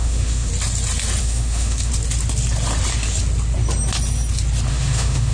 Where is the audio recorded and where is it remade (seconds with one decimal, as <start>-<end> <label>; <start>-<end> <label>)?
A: 0.0-0.5 remade; 0.5-1.2 recorded; 1.2-1.9 remade; 1.9-4.7 recorded; 4.7-5.3 remade